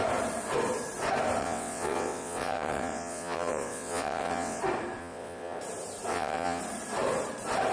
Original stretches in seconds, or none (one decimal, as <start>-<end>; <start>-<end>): 0.0-1.4; 4.6-5.0; 5.6-6.1; 6.6-7.7